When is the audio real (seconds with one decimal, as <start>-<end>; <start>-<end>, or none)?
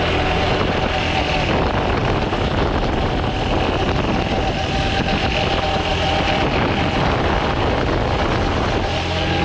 0.0-2.0; 5.4-5.9; 7.6-9.4